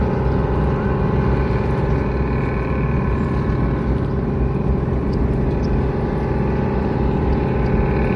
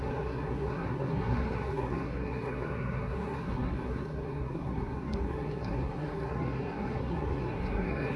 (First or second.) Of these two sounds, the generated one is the second